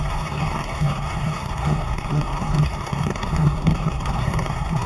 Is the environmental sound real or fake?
fake